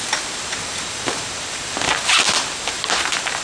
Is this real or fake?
real